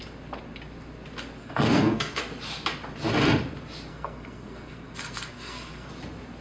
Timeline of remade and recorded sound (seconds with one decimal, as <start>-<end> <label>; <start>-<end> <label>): 0.0-1.4 recorded; 1.4-2.2 remade; 2.2-3.9 recorded; 3.9-5.9 remade; 5.9-6.4 recorded